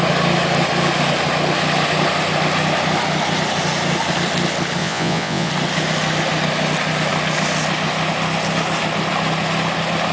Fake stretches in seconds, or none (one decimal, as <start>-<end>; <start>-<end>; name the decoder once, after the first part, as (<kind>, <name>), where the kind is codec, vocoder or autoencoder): 4.8-5.5 (vocoder, Vocos)